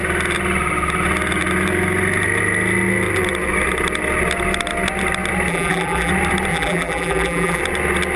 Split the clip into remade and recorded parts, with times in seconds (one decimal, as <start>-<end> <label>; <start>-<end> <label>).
0.0-5.5 recorded; 5.5-6.1 remade; 6.1-6.5 recorded; 6.5-7.6 remade; 7.6-8.2 recorded